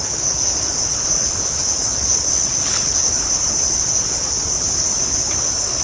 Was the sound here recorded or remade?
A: remade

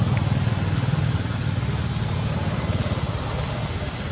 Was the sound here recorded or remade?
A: recorded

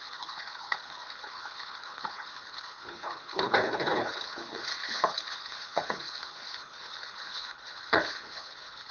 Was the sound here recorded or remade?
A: remade